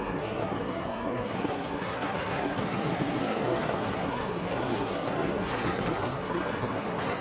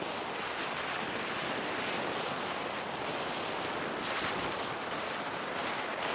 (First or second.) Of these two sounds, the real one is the second